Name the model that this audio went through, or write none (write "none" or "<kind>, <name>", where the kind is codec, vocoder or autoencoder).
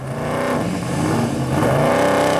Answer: none